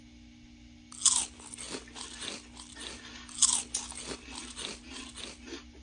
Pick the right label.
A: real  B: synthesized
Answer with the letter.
A